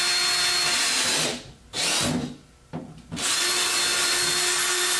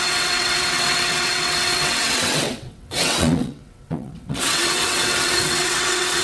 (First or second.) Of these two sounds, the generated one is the second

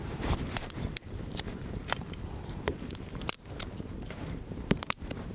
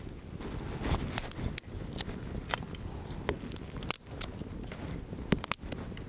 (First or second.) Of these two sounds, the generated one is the first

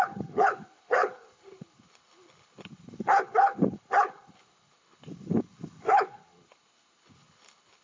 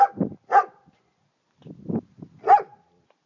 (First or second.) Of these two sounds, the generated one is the first